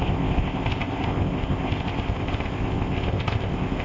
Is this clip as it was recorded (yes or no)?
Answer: no